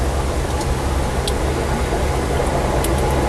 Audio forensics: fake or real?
real